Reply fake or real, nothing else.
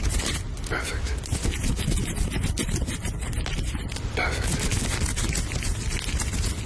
real